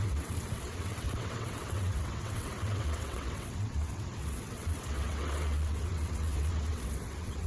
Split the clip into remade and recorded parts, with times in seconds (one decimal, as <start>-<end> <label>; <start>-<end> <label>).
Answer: 0.0-7.5 remade